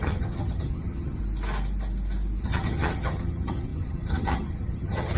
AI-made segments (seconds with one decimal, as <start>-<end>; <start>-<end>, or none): 0.0-1.2; 2.4-5.2